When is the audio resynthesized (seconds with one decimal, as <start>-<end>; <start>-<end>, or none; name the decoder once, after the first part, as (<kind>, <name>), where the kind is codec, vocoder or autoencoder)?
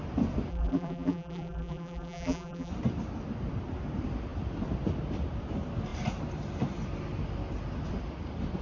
0.5-2.7 (vocoder, BigVGAN v2)